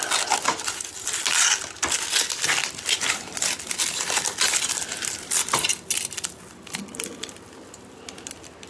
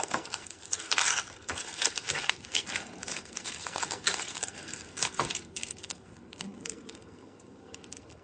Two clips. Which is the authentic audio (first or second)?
first